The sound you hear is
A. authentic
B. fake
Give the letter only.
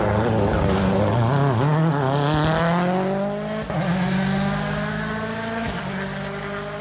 A